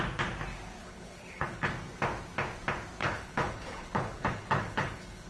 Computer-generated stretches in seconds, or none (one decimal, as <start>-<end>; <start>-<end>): 0.8-1.7; 3.0-5.3